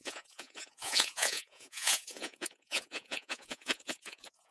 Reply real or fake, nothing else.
fake